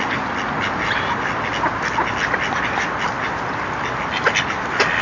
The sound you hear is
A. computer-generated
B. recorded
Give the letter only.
B